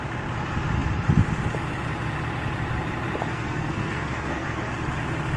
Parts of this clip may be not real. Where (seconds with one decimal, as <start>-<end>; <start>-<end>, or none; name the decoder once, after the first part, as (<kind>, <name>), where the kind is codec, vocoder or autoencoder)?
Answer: 3.3-4.6 (codec, SNAC)